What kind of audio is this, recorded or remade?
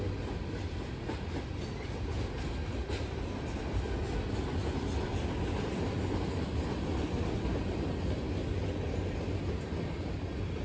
recorded